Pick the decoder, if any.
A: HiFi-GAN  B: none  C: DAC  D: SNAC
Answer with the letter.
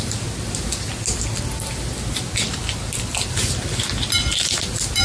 B